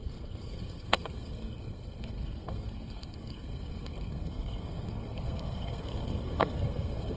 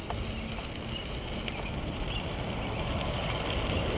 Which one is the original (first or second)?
second